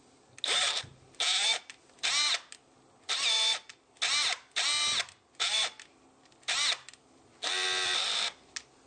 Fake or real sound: real